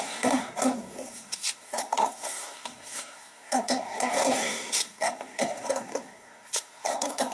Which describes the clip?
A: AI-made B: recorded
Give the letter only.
A